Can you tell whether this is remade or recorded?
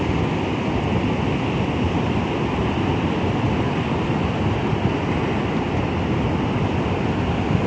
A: recorded